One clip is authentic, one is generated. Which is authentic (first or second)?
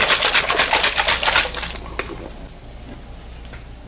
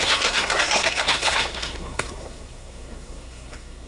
first